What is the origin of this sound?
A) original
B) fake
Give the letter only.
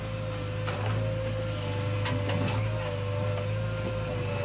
A